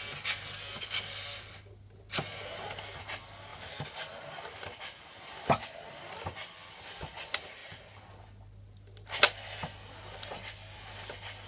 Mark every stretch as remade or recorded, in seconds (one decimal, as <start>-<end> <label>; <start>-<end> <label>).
0.0-11.5 recorded